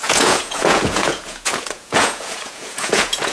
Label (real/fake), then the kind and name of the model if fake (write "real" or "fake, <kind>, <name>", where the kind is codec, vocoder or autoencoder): fake, vocoder, Vocos